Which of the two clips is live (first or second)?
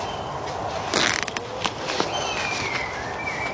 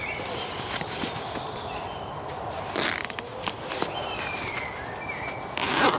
first